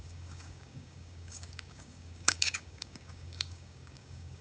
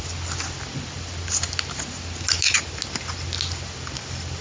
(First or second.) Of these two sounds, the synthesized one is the first